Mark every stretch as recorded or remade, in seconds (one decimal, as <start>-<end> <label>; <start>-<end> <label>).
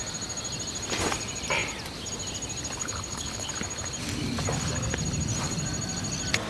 0.0-2.8 recorded; 2.8-3.5 remade; 3.5-6.5 recorded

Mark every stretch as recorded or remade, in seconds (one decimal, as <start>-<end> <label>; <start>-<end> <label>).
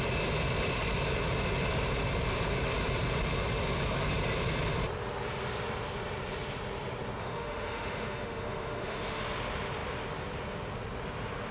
0.0-7.2 recorded; 7.2-9.2 remade; 9.2-11.5 recorded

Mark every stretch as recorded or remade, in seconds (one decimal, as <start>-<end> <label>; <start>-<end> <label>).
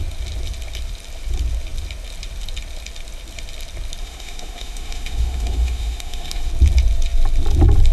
0.0-4.0 recorded; 4.0-6.5 remade; 6.5-7.9 recorded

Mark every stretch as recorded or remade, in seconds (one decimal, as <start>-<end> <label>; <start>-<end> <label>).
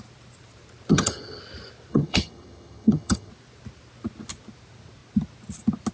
0.0-0.9 recorded; 0.9-1.4 remade; 1.4-1.9 recorded; 1.9-3.3 remade; 3.3-5.9 recorded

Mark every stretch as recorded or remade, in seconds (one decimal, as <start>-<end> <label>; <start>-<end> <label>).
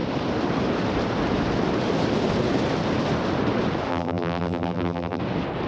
0.0-3.9 recorded; 3.9-5.2 remade; 5.2-5.7 recorded